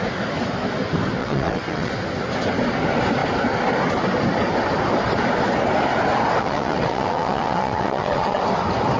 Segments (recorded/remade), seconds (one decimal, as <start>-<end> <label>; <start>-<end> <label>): 0.0-1.2 recorded; 1.2-1.9 remade; 1.9-6.4 recorded; 6.4-8.4 remade; 8.4-9.0 recorded